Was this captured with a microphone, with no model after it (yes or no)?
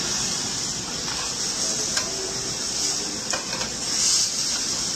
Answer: yes